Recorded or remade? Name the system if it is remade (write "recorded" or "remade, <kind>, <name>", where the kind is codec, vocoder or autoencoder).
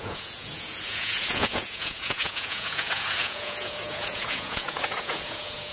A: remade, vocoder, Vocos